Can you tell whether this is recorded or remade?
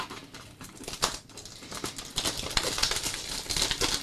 recorded